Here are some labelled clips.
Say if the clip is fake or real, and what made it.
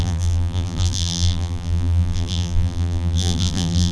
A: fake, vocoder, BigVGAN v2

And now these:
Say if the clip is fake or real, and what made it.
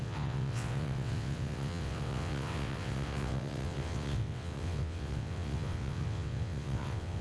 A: fake, vocoder, WaveNeXt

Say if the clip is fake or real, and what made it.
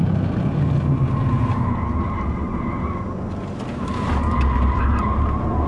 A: real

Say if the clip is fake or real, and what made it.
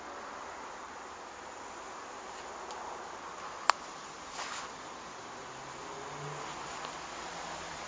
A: real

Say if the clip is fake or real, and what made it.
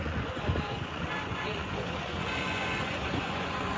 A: fake, vocoder, Vocos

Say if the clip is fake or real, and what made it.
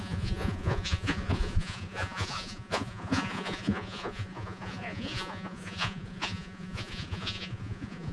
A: fake, vocoder, Vocos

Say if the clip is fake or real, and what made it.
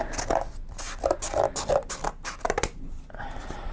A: real